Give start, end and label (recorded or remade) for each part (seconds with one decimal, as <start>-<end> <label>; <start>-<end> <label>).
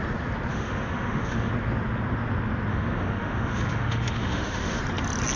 0.0-0.5 recorded; 0.5-1.5 remade; 1.5-2.7 recorded; 2.7-4.8 remade; 4.8-5.4 recorded